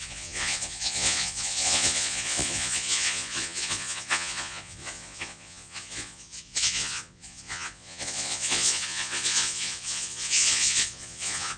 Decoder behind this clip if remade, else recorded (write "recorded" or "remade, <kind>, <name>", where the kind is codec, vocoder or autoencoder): remade, vocoder, Vocos